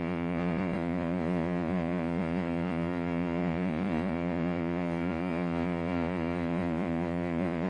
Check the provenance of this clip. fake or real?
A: fake